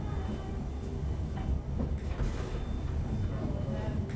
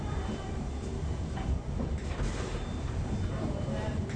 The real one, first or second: first